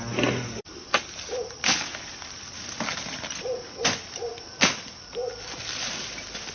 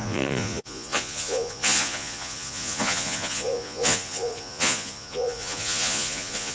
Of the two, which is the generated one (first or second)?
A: second